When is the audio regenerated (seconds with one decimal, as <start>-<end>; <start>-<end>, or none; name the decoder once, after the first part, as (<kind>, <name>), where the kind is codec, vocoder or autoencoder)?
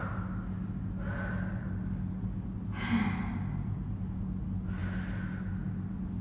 none